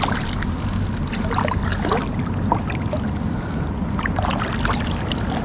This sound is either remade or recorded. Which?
recorded